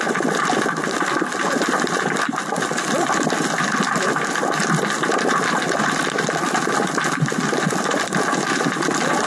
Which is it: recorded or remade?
remade